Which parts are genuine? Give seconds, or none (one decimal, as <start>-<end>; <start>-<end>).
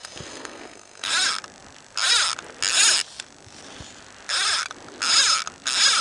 1.1-6.0